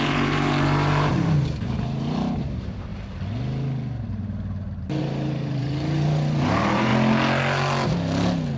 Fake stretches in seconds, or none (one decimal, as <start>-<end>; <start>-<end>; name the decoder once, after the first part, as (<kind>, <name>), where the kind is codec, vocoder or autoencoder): 0.0-2.9 (vocoder, BigVGAN v2); 5.0-6.9